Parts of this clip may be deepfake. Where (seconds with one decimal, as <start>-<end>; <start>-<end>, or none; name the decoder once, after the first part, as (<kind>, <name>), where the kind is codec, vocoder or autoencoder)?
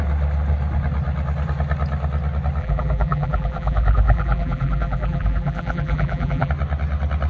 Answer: 2.6-6.5 (vocoder, BigVGAN v2)